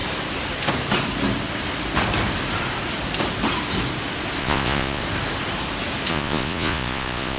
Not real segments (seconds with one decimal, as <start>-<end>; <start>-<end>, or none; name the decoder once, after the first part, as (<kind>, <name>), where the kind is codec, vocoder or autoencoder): 4.4-5.0 (vocoder, Vocos); 6.1-7.4